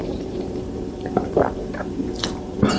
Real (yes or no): no